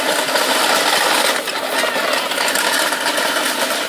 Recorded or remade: recorded